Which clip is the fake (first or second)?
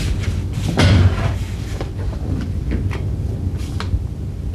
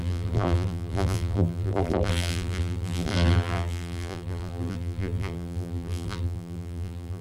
second